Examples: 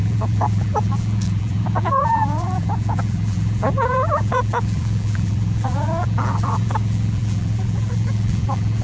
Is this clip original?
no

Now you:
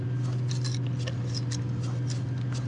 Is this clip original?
yes